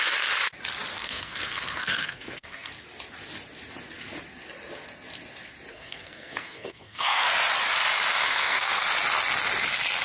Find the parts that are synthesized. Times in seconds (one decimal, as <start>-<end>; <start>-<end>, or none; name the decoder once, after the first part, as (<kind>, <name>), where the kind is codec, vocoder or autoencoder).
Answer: 0.9-2.7 (codec, SNAC); 5.7-7.3; 8.2-8.8